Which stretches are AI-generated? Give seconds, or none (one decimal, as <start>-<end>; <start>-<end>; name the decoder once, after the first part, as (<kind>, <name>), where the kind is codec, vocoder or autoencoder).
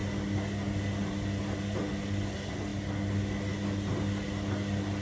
none